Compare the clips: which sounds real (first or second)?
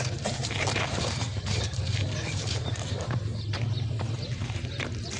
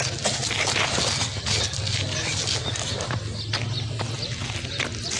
second